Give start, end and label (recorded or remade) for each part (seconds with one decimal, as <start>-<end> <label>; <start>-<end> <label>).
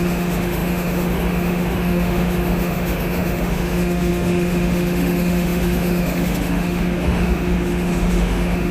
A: 0.0-8.7 remade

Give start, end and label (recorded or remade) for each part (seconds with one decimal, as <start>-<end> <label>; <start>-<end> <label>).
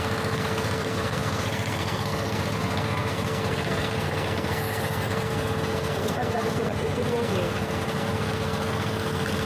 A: 0.0-9.5 remade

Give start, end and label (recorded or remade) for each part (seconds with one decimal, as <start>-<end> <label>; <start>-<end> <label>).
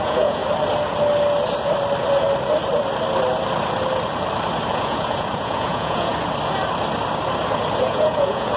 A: 0.0-0.4 remade; 0.4-4.7 recorded; 4.7-6.1 remade; 6.1-7.8 recorded; 7.8-8.6 remade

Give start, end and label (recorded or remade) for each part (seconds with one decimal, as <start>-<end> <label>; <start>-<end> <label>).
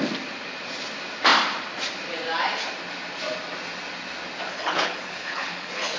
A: 0.0-4.5 recorded; 4.5-6.0 remade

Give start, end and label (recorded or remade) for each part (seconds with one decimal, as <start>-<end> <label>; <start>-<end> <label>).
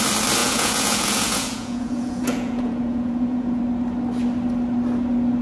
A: 0.0-0.4 recorded; 0.4-3.6 remade; 3.6-5.4 recorded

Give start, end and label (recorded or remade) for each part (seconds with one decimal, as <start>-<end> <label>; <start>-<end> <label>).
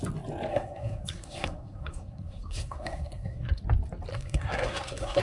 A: 0.0-0.5 recorded; 0.5-3.6 remade; 3.6-4.1 recorded; 4.1-5.2 remade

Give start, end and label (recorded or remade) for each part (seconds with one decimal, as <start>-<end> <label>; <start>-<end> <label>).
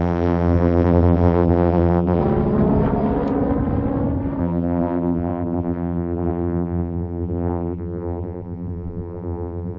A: 0.0-2.2 remade; 2.2-4.4 recorded; 4.4-9.8 remade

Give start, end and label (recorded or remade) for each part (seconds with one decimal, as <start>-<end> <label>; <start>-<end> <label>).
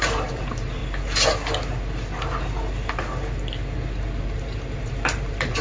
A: 0.0-0.8 remade; 0.8-4.2 recorded; 4.2-5.6 remade